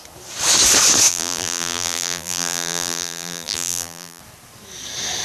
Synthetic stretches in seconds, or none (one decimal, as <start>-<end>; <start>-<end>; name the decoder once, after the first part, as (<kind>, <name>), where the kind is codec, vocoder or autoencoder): 1.1-4.2 (vocoder, BigVGAN v2)